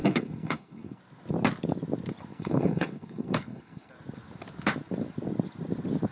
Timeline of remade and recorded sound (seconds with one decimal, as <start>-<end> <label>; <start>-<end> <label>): 0.0-1.0 remade; 1.0-2.3 recorded; 2.3-3.9 remade; 3.9-6.1 recorded